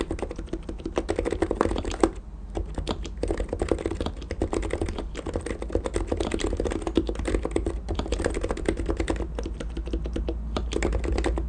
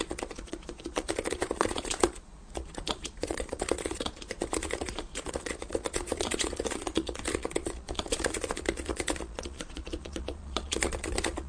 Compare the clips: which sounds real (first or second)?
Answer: first